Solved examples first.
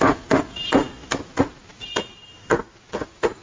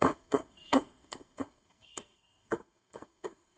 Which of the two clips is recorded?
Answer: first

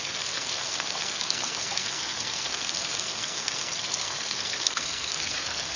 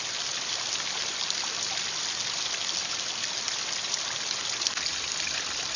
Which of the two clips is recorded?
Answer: second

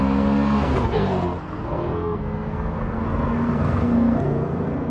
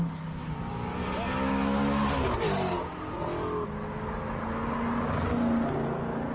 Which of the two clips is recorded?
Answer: second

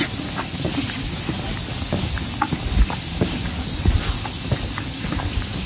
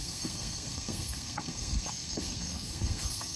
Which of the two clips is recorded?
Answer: first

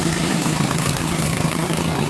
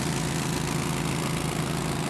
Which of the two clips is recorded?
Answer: second